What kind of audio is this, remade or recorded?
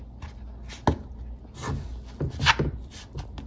recorded